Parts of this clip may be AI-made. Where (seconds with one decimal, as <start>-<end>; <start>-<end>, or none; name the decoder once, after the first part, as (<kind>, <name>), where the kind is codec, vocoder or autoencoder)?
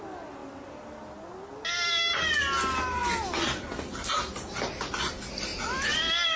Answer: none